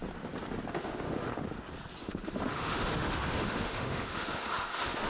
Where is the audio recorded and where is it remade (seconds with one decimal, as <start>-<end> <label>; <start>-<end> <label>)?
0.0-0.7 recorded; 0.7-1.3 remade; 1.3-2.0 recorded; 2.0-5.1 remade